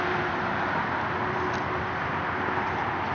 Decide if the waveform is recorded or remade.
recorded